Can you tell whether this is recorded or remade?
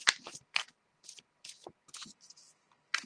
remade